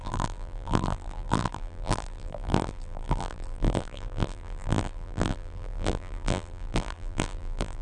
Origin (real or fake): fake